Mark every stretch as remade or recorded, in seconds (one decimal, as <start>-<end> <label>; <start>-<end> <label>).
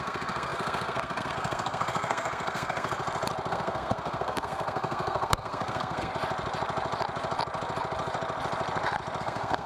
0.0-3.0 remade; 3.0-3.5 recorded; 3.5-6.1 remade; 6.1-9.2 recorded; 9.2-9.7 remade